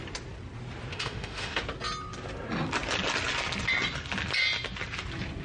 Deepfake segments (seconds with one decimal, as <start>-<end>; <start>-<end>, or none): 0.9-1.6